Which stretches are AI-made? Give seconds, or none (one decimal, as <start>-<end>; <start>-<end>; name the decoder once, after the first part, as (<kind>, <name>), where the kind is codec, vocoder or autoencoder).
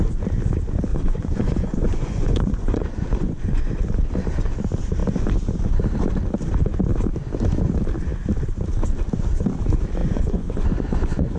0.9-3.6 (vocoder, Vocos); 10.0-11.4